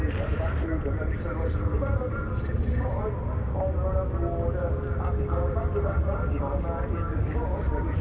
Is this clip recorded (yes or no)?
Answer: yes